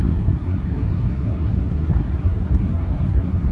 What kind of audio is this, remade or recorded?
remade